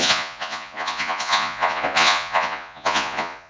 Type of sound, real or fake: fake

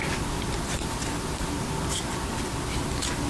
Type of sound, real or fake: real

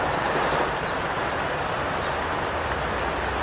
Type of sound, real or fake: fake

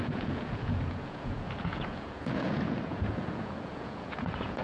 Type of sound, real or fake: fake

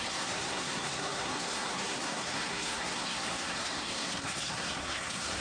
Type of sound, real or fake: fake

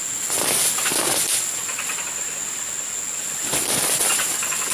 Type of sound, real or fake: real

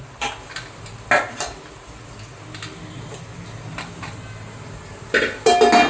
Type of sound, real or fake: real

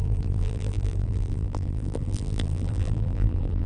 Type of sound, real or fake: fake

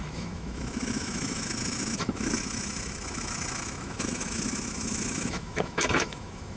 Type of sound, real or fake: fake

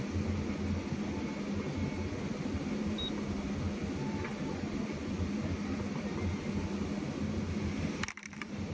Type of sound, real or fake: real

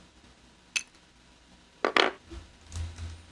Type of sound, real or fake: real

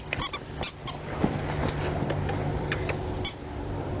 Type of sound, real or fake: real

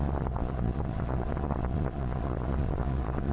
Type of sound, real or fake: fake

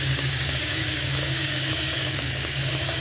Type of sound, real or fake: fake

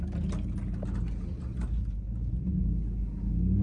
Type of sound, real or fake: real